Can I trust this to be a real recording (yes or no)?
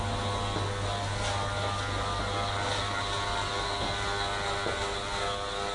yes